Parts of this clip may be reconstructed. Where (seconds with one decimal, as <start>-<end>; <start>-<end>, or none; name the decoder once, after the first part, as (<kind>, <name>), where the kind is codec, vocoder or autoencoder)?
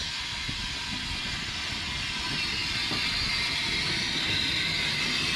none